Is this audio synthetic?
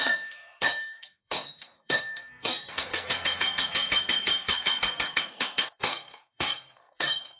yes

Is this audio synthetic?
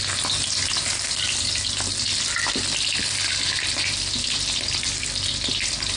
no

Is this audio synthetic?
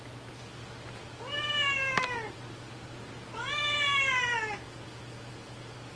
no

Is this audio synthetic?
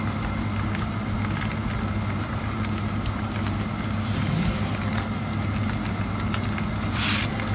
no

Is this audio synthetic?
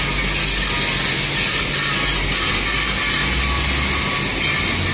no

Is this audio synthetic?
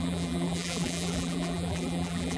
yes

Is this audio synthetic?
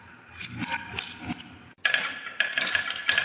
no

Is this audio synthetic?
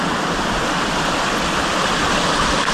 no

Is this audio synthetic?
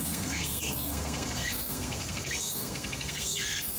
yes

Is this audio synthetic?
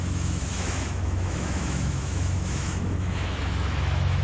yes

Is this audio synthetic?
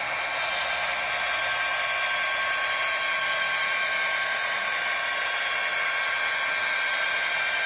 no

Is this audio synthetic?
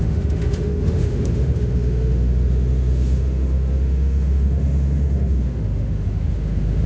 yes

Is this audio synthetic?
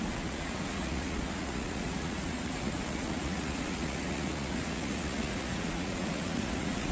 yes